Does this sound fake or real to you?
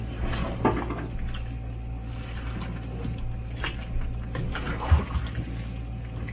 real